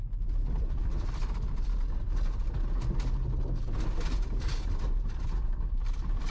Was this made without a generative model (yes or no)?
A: yes